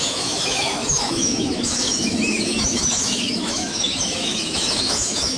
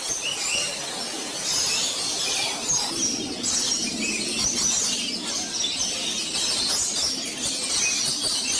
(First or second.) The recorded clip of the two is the second